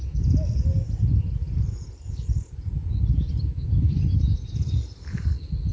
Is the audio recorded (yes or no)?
yes